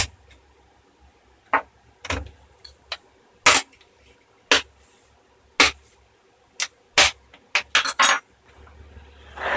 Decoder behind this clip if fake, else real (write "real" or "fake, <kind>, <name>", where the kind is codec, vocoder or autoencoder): real